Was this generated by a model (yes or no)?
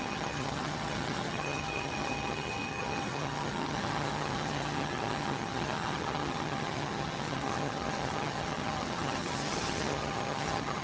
yes